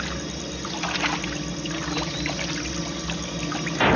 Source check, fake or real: real